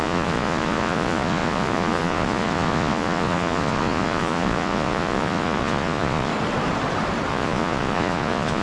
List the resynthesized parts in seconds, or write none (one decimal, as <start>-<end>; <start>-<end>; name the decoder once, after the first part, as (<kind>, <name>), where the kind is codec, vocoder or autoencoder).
0.0-6.3 (vocoder, Vocos); 7.3-8.6